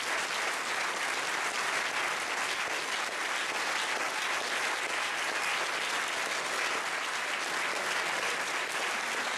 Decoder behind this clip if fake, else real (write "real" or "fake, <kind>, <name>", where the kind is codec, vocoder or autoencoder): real